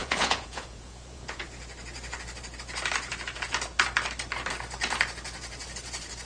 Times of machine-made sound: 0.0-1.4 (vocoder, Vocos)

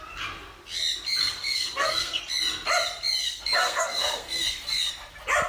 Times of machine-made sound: 1.2-2.2 (codec, SNAC); 3.2-4.9

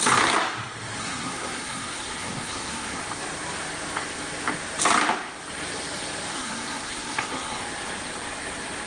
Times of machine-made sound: 1.0-3.0 (codec, SNAC); 6.3-7.6

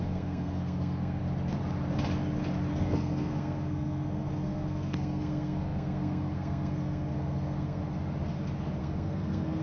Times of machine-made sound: 0.0-1.2 (codec, SNAC); 2.7-7.8; 8.8-9.6

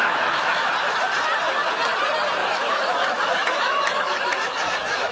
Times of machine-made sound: 0.0-0.7 (autoencoder, DAC-VAE); 2.4-5.1

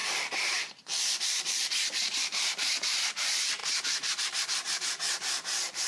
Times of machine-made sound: 0.0-3.6 (vocoder, BigVGAN v2); 4.2-5.9

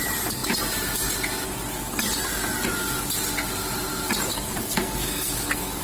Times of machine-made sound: 4.3-5.8 (codec, SNAC)